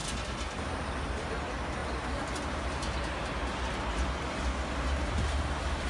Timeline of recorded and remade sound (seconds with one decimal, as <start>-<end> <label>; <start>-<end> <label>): 0.0-5.9 recorded